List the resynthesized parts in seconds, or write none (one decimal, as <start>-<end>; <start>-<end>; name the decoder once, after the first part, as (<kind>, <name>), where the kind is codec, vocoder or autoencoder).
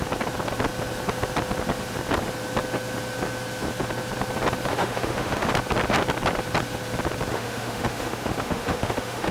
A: 4.7-5.5 (autoencoder, DAC-VAE); 7.3-9.3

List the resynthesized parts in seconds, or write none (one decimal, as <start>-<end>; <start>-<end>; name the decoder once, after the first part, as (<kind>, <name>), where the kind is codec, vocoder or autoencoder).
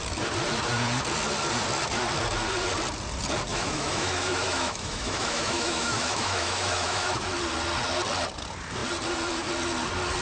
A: 3.5-7.3 (autoencoder, DAC-VAE)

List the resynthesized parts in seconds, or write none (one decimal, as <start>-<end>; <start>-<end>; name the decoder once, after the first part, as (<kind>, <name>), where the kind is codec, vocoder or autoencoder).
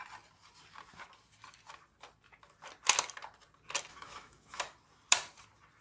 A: 3.9-4.6 (autoencoder, DAC-VAE)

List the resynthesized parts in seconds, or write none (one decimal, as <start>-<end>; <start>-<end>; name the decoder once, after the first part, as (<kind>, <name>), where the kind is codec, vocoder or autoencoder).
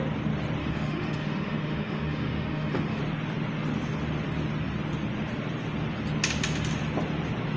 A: 0.6-3.0 (autoencoder, DAC-VAE)